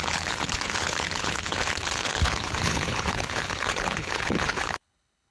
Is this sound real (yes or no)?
no